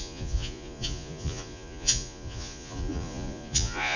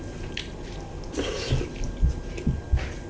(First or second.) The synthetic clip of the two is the first